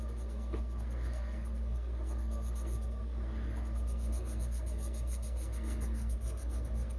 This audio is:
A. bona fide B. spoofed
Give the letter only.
B